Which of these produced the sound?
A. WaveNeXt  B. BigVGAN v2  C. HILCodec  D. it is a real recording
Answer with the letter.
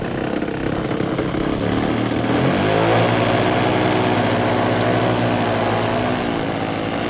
D